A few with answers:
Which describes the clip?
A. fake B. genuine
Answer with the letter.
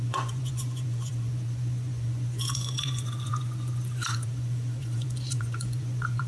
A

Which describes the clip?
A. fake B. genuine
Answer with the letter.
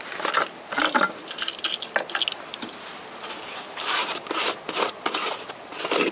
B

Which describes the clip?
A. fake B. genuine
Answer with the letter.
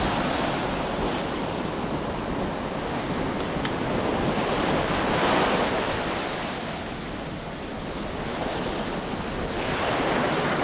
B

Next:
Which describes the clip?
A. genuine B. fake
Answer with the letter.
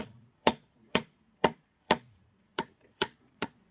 B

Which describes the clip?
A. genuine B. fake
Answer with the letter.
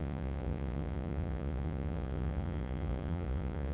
B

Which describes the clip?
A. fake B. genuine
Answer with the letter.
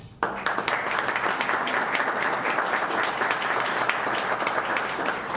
B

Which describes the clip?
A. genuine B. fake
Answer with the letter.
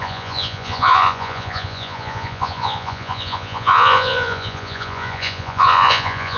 B